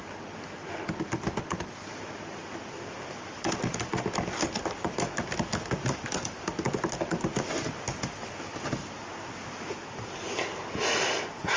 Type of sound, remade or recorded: recorded